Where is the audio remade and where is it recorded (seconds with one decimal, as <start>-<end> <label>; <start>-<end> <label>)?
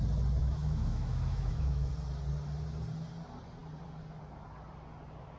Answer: 0.0-0.4 recorded; 0.4-1.9 remade; 1.9-5.4 recorded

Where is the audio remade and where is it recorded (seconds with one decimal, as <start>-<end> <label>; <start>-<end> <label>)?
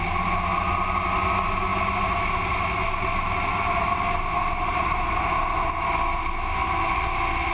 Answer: 0.0-7.5 recorded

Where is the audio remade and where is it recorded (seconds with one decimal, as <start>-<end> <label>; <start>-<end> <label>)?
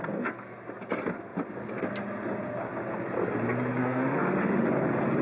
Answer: 0.0-3.8 recorded; 3.8-4.6 remade; 4.6-5.2 recorded